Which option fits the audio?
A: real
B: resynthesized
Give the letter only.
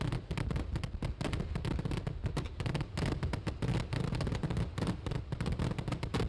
A